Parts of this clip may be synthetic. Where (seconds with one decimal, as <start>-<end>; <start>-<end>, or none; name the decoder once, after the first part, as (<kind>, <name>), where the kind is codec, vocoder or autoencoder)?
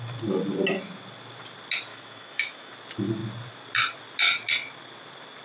1.9-2.7 (autoencoder, DAC-VAE)